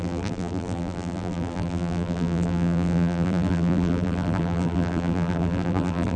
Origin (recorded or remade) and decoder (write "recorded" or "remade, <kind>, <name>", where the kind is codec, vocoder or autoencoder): remade, vocoder, BigVGAN v2